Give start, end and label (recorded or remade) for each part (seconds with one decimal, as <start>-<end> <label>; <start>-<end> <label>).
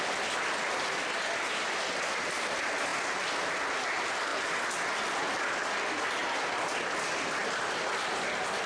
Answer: 0.0-8.7 recorded